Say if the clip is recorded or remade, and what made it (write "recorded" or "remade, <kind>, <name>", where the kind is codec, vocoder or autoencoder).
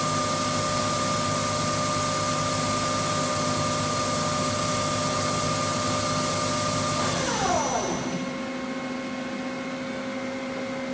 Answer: recorded